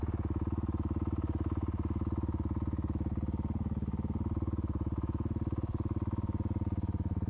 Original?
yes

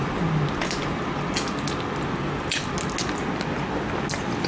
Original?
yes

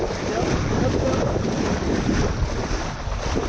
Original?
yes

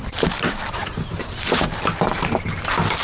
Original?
no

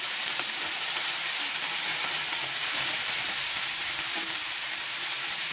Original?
yes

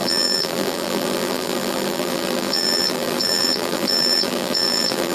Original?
no